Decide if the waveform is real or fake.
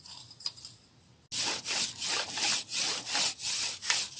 real